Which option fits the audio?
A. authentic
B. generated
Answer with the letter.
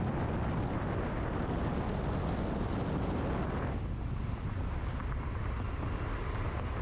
A